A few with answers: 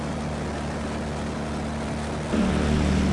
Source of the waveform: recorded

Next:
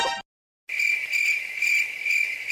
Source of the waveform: recorded